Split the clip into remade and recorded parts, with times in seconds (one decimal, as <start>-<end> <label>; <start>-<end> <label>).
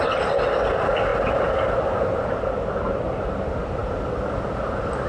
0.0-5.1 recorded